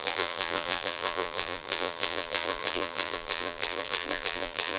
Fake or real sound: fake